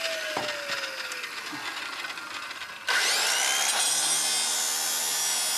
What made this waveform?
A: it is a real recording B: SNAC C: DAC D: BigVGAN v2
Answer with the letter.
A